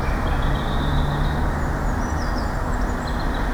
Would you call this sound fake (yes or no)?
no